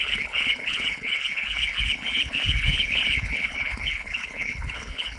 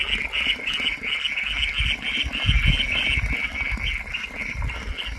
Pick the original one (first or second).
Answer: second